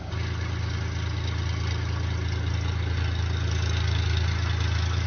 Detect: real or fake real